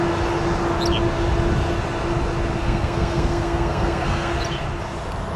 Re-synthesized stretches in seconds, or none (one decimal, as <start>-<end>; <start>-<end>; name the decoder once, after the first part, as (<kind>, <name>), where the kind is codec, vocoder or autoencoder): 2.6-4.3 (codec, SNAC)